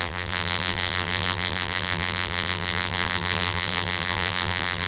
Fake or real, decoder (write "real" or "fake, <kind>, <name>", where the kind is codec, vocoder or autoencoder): fake, vocoder, BigVGAN v2